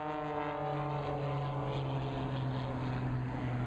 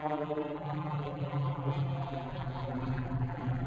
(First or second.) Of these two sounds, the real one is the first